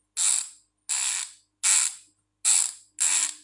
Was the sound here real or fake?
real